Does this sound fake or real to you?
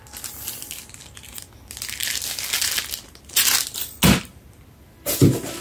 real